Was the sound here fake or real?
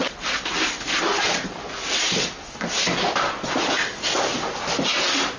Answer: real